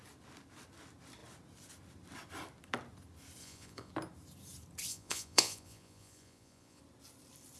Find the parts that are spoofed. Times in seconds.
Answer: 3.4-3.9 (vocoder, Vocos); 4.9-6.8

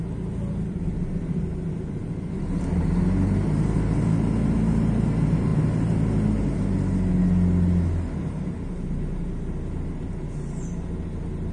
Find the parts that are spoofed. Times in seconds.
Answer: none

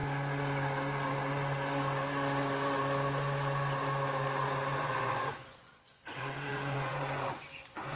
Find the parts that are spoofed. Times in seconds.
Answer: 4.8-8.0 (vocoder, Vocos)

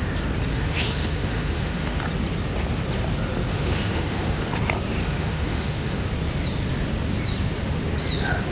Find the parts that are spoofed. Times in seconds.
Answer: 0.5-2.0 (autoencoder, DAC-VAE); 3.5-4.4; 5.0-6.0